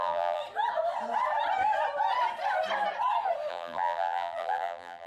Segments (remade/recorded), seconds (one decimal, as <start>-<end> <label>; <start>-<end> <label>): 0.0-0.4 remade; 0.4-3.5 recorded; 3.5-5.1 remade